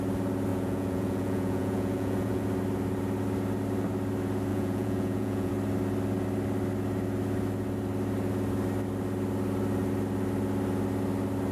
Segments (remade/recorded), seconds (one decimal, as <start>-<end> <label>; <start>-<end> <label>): 0.0-0.5 recorded; 0.5-2.4 remade; 2.4-4.5 recorded; 4.5-5.5 remade; 5.5-11.5 recorded